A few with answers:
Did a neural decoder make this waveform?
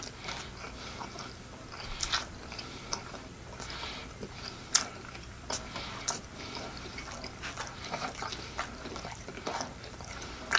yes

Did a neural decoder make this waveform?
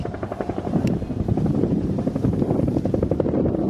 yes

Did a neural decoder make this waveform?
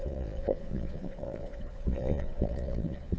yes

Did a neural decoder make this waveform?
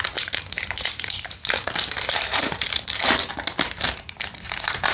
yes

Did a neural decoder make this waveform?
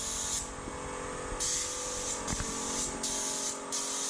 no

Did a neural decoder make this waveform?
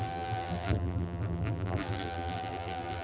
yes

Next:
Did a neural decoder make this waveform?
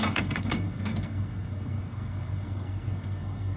yes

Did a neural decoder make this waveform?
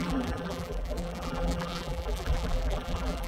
yes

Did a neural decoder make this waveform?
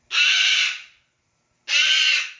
no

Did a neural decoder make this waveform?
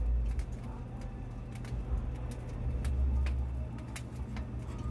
no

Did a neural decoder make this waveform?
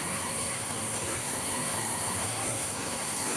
yes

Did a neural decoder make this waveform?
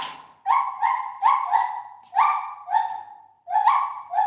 no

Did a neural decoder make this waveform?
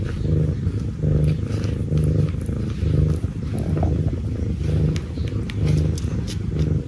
no